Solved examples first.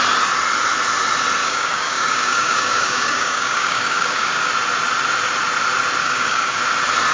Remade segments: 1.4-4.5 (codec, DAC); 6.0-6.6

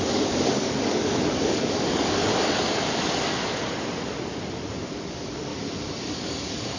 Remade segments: 0.0-2.3 (codec, DAC); 5.1-5.5; 6.1-6.8

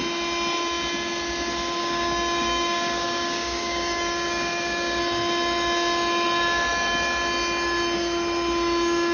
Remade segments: 1.8-5.0 (codec, DAC)

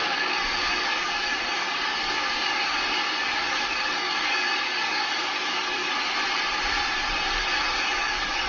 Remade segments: 0.0-5.9 (codec, DAC); 7.6-8.5

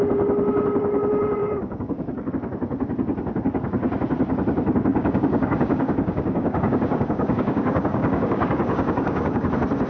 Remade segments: 1.4-2.3 (codec, DAC); 4.9-9.5

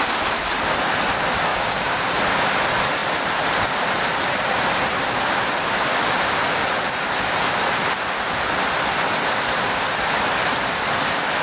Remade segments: 1.5-2.0 (codec, DAC)

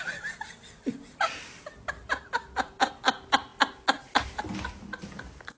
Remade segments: none